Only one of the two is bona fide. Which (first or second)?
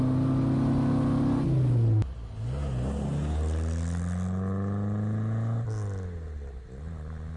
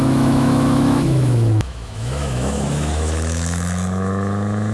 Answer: first